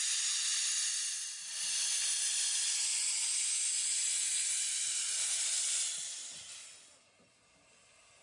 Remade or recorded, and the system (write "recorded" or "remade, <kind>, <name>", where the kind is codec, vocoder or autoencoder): recorded